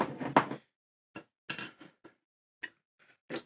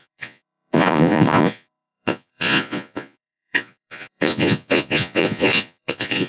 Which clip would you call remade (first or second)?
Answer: second